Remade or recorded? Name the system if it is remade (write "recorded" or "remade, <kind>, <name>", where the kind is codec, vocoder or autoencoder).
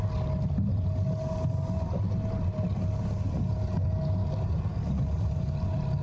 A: recorded